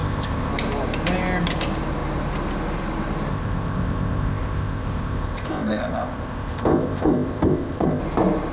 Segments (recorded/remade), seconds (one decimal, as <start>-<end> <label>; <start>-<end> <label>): 0.0-0.5 remade; 0.5-3.3 recorded; 3.3-8.0 remade; 8.0-8.5 recorded